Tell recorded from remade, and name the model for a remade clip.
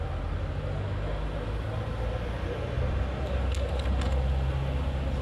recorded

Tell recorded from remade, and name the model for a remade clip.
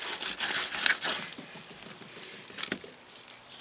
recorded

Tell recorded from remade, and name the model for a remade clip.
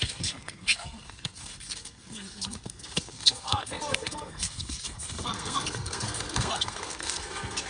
remade, codec, SNAC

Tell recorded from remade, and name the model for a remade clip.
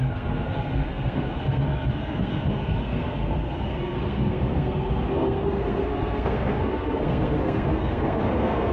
remade, codec, SNAC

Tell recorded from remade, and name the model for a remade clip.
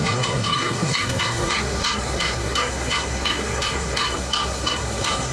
remade, codec, SNAC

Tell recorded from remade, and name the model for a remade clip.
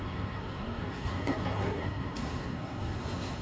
remade, codec, SNAC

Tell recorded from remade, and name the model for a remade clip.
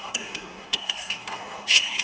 remade, codec, SNAC